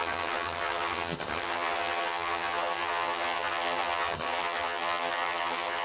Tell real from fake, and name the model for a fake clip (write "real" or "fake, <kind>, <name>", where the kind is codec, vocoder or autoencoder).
fake, vocoder, HiFi-GAN